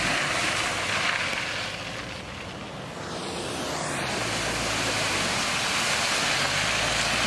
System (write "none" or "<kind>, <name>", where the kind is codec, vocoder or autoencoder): none